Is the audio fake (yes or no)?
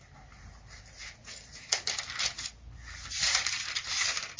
no